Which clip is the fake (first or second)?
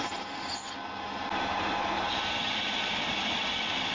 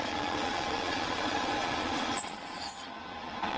second